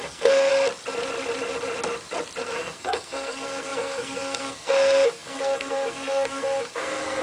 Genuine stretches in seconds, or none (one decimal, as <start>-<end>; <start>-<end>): 0.5-2.4